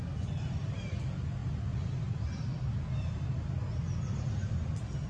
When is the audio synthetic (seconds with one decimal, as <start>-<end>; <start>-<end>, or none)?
none